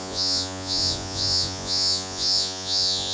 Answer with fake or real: fake